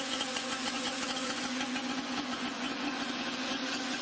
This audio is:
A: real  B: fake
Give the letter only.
B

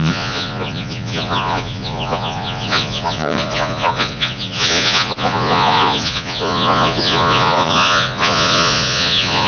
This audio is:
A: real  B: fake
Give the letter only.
B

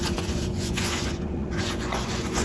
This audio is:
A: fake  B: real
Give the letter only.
A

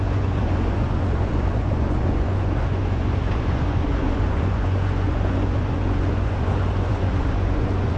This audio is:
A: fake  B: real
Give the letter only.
A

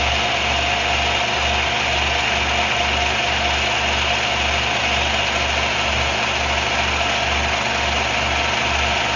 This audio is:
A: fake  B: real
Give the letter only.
B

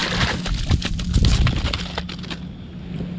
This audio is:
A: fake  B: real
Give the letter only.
B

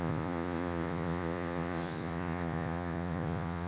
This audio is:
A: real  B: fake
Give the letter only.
B